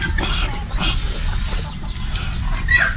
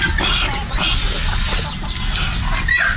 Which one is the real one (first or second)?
second